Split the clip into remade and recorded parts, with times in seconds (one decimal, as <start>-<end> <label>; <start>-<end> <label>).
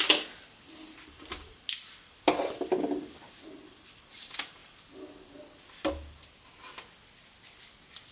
0.0-8.1 recorded